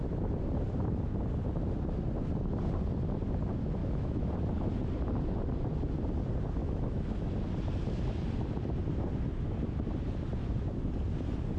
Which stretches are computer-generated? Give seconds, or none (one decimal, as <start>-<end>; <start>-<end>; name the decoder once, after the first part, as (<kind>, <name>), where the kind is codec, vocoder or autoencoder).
3.8-4.3 (autoencoder, DAC-VAE); 6.6-7.3